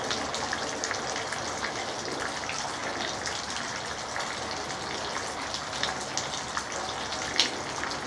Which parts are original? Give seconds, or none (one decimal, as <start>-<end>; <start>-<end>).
0.0-8.1